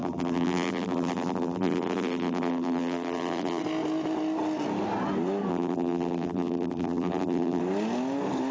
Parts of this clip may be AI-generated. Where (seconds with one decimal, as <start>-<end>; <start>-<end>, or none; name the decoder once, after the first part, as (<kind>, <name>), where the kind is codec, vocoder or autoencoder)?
0.0-3.6 (vocoder, BigVGAN v2); 5.5-7.6